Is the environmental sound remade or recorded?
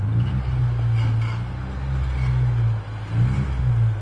recorded